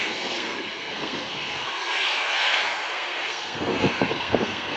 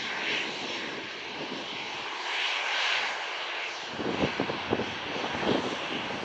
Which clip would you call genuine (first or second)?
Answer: second